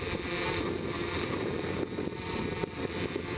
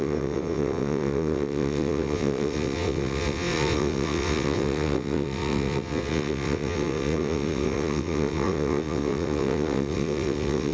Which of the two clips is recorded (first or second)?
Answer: first